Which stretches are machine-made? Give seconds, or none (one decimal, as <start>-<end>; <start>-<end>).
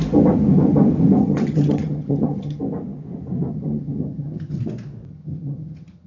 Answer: 1.2-2.6; 3.5-4.6; 5.1-6.1